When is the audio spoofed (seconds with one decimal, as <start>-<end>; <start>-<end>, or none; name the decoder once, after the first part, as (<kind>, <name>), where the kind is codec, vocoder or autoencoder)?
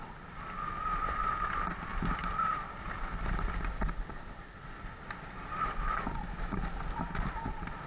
none